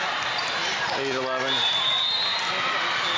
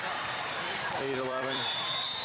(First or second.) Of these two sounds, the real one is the first